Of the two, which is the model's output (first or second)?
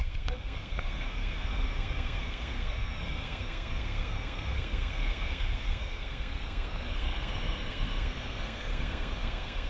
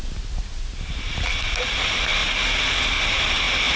first